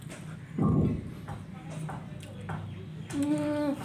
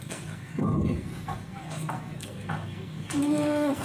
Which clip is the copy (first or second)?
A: second